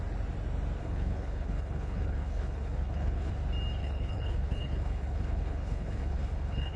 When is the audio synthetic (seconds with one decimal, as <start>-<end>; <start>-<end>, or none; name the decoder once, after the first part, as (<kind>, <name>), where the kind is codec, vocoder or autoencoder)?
0.8-3.3 (codec, HILCodec); 3.8-6.8